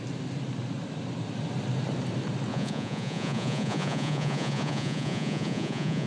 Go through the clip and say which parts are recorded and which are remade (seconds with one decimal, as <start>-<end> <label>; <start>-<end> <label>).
0.0-2.5 recorded; 2.5-6.1 remade